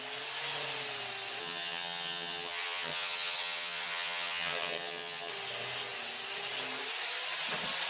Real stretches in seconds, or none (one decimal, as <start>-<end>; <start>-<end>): 0.0-1.4; 5.3-7.9